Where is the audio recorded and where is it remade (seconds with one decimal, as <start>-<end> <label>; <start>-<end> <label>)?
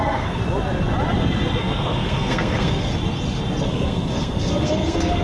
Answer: 0.0-0.4 remade; 0.4-1.6 recorded; 1.6-2.9 remade; 2.9-3.6 recorded; 3.6-5.2 remade